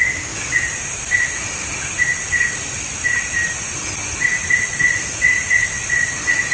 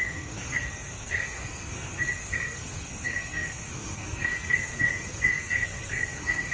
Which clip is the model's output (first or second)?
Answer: second